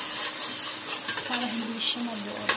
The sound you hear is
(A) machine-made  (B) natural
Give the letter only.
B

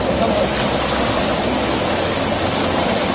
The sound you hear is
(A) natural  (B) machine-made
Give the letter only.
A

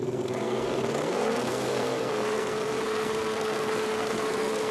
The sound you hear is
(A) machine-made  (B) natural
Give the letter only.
A